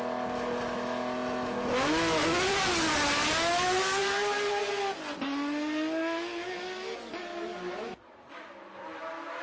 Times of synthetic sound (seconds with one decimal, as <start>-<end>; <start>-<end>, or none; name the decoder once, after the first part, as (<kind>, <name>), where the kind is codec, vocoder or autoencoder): 4.0-4.7 (vocoder, BigVGAN v2); 7.3-9.4